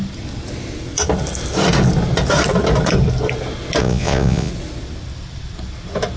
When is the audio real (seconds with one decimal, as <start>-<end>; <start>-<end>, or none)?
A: 0.0-3.8; 4.5-6.2